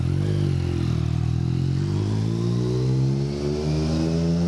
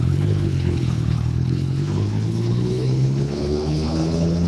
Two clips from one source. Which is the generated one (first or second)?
second